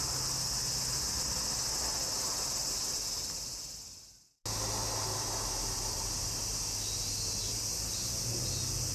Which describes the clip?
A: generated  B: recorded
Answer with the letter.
B